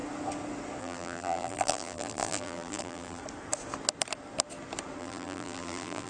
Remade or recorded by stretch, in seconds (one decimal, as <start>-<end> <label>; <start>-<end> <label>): 0.0-0.8 recorded; 0.8-3.2 remade; 3.2-5.0 recorded; 5.0-6.1 remade